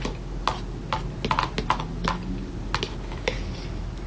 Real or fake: real